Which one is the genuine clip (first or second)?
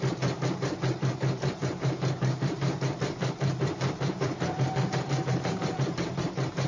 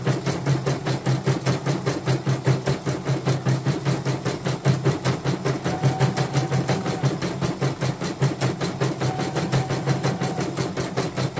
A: second